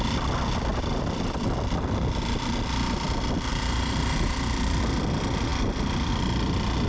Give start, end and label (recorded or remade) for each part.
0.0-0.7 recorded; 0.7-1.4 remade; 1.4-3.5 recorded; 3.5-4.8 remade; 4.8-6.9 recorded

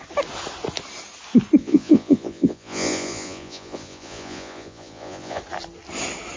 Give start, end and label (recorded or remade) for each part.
0.0-1.6 recorded; 1.6-5.4 remade; 5.4-6.4 recorded

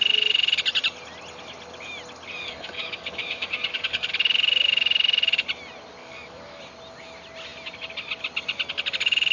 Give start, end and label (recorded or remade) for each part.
0.0-2.4 recorded; 2.4-4.1 remade; 4.1-6.0 recorded; 6.0-6.6 remade; 6.6-9.3 recorded

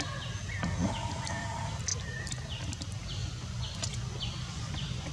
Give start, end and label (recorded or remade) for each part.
0.0-3.2 recorded; 3.2-5.1 remade

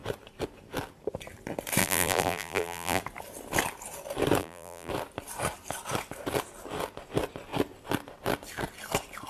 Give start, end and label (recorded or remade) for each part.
0.0-1.8 recorded; 1.8-3.0 remade; 3.0-4.4 recorded; 4.4-4.9 remade; 4.9-9.3 recorded

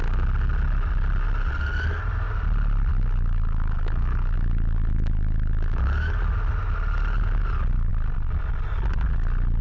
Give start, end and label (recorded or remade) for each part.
0.0-2.9 recorded; 2.9-6.1 remade; 6.1-9.6 recorded